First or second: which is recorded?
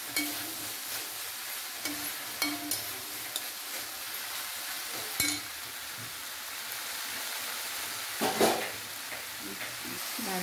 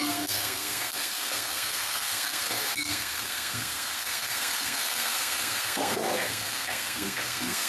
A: first